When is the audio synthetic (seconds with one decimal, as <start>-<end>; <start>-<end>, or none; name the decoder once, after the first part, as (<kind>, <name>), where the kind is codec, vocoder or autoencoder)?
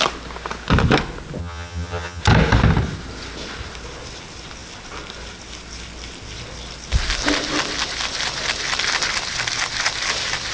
1.4-2.2 (vocoder, HiFi-GAN)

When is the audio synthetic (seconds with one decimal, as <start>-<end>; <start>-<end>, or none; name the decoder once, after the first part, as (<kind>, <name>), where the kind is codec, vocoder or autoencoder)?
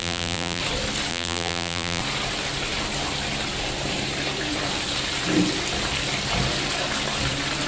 0.0-0.6 (vocoder, BigVGAN v2); 1.1-2.0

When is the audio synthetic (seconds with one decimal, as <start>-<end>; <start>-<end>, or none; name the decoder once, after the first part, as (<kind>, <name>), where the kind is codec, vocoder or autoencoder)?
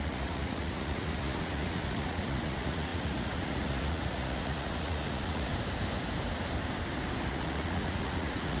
0.0-5.5 (vocoder, Vocos); 7.3-8.6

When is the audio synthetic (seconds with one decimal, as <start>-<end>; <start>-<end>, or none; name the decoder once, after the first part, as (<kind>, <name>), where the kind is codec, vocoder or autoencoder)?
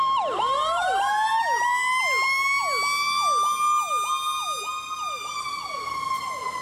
0.0-1.3 (vocoder, BigVGAN v2); 4.6-6.6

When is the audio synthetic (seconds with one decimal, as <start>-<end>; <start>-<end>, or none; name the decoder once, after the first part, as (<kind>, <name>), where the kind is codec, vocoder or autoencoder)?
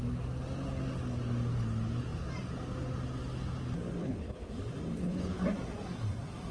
4.0-4.5 (codec, HILCodec); 4.9-5.4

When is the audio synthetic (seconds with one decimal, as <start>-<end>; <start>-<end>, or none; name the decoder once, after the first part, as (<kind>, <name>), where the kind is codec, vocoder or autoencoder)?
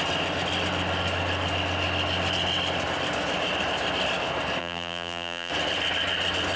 4.6-5.5 (vocoder, BigVGAN v2)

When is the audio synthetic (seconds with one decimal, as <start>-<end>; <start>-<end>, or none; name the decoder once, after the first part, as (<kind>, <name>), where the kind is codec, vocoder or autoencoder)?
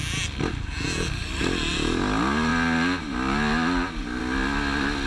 none